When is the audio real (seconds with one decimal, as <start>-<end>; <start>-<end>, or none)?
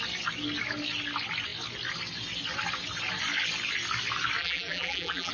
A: 0.0-4.4